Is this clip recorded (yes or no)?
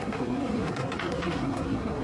no